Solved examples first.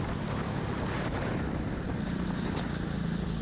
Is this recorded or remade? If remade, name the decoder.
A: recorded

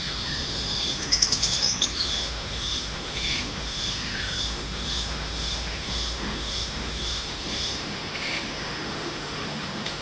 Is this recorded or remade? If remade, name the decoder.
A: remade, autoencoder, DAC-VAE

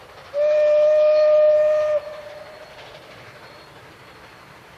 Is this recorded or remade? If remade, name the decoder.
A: recorded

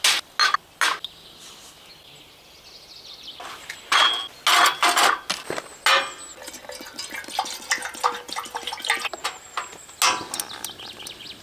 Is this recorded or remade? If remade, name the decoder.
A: recorded